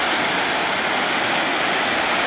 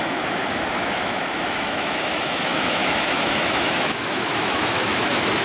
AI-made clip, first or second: second